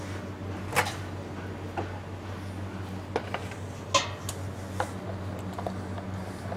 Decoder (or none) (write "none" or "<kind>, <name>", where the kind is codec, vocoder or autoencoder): none